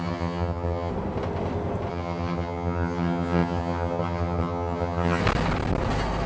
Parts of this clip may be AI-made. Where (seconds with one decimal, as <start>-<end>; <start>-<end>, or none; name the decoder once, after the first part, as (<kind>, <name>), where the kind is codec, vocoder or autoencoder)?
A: 0.0-0.9 (vocoder, HiFi-GAN); 1.9-5.2